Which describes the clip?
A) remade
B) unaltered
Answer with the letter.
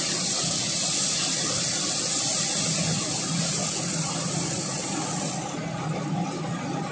B